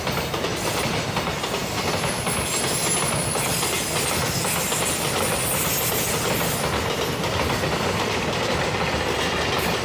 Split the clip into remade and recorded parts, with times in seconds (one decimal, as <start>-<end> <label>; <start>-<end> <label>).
0.0-9.8 recorded